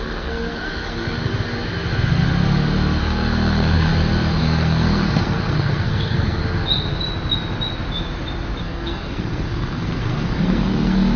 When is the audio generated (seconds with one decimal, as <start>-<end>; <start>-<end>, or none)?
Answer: 0.0-1.3; 3.0-3.9; 4.4-6.4; 8.6-11.2